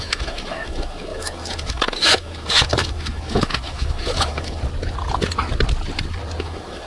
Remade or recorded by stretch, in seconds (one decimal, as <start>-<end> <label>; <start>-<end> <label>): 0.0-4.6 remade; 4.6-6.4 recorded; 6.4-6.9 remade